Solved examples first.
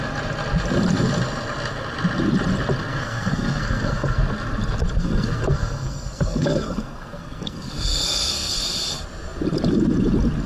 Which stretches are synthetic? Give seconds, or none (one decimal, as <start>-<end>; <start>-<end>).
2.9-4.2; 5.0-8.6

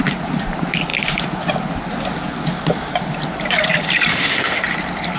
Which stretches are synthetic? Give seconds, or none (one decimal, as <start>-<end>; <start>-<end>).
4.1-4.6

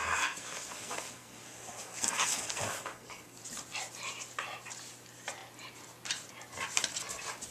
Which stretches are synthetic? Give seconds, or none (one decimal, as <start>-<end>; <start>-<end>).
0.0-3.4